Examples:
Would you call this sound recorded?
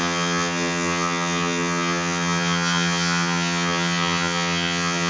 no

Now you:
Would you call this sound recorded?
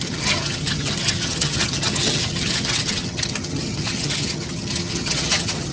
no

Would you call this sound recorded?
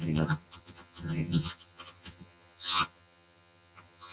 no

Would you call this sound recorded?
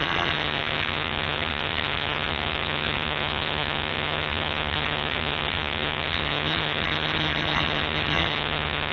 no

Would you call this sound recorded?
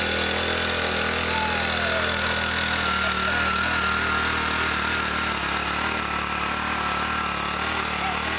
yes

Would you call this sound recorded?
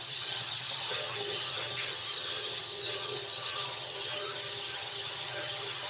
no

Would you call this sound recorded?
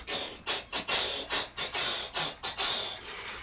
yes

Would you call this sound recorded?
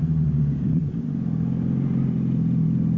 yes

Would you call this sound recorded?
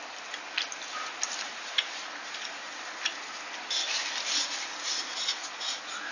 yes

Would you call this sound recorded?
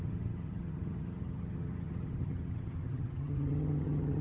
no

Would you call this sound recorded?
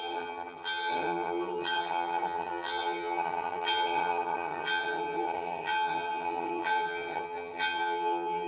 no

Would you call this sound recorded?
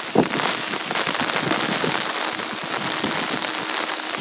yes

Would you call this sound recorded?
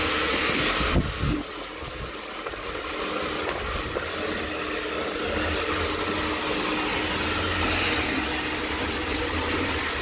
yes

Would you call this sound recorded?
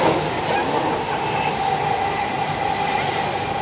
yes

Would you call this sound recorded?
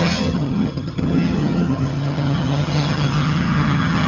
no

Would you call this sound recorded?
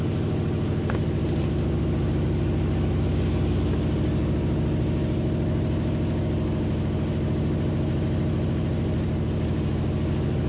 yes